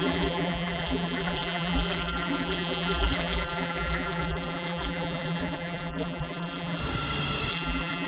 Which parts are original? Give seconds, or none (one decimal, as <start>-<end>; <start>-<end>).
6.8-7.5